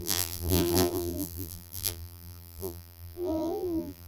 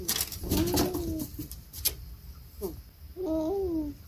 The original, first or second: second